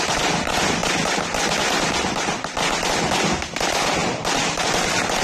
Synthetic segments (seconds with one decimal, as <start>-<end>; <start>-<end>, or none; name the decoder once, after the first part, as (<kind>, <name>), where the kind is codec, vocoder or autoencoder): none